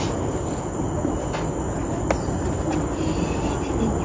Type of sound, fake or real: real